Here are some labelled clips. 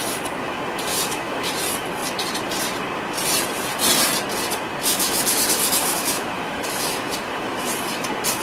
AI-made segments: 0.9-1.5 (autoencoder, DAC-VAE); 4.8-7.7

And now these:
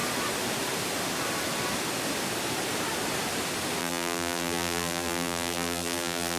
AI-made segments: 3.8-6.4 (vocoder, BigVGAN v2)